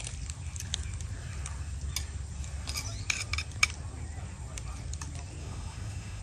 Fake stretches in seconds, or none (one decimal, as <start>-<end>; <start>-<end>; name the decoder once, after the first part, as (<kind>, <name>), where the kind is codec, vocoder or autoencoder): 5.4-6.2 (autoencoder, DAC-VAE)